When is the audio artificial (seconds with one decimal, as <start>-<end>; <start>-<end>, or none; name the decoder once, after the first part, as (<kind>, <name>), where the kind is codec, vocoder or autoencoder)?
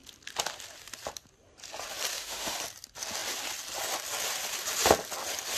2.1-2.6 (autoencoder, DAC-VAE)